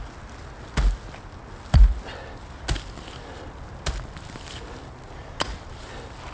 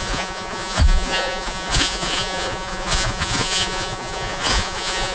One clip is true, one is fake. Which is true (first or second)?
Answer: first